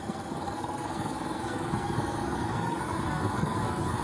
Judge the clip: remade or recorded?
remade